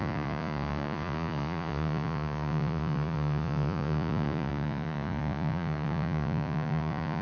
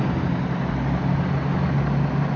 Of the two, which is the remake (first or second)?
first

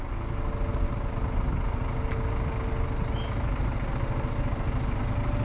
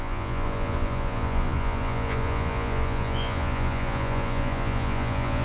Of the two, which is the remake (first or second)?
second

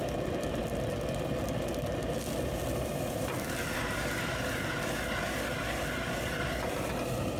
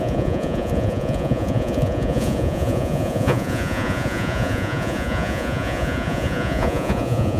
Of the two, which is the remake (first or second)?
second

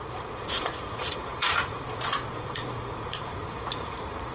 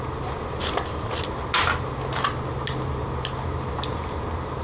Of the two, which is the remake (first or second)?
first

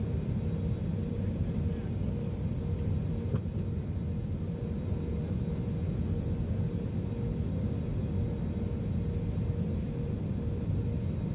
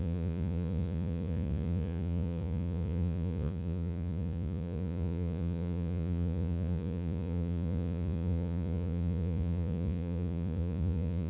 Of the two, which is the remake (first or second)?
second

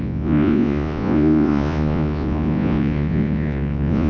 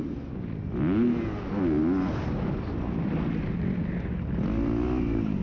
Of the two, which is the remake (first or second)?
first